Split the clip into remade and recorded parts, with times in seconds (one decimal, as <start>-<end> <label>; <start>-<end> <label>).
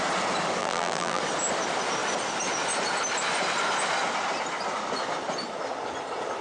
0.0-0.6 recorded; 0.6-1.2 remade; 1.2-6.4 recorded